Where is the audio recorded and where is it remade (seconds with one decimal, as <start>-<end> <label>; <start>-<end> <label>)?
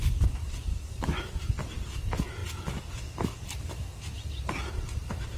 0.0-0.7 recorded; 0.7-1.3 remade; 1.3-5.4 recorded